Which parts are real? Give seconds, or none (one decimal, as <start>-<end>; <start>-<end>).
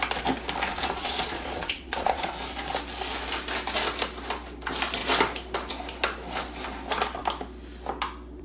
0.0-0.7; 2.3-8.4